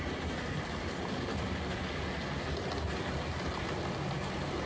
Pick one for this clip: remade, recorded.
recorded